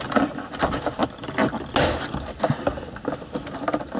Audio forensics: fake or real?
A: real